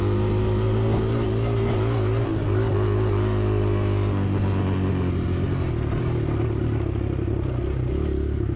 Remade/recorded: recorded